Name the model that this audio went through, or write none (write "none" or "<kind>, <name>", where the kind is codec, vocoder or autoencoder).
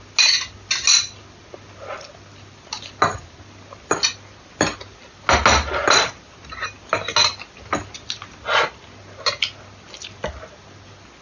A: none